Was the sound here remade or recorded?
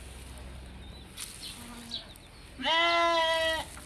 recorded